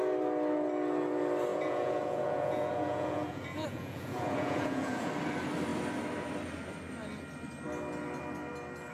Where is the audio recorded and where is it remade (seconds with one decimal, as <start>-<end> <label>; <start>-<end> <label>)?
0.0-1.5 recorded; 1.5-5.1 remade; 5.1-8.9 recorded